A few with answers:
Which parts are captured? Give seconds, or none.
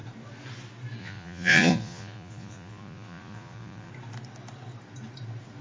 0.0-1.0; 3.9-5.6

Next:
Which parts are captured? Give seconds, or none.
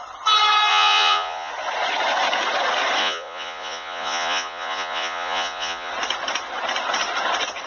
0.0-0.7; 1.5-3.0; 5.9-7.7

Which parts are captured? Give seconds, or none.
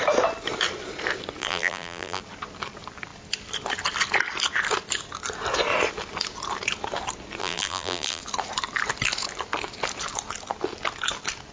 0.0-1.4; 2.2-7.4; 8.2-11.5